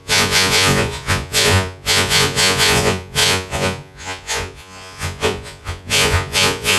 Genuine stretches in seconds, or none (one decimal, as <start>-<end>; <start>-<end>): none